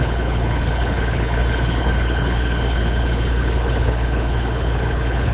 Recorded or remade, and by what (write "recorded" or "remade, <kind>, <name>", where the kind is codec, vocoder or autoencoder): remade, codec, HILCodec